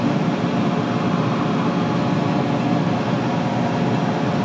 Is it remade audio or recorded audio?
recorded